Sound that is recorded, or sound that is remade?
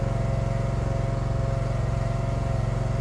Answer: recorded